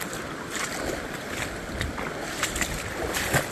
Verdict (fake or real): real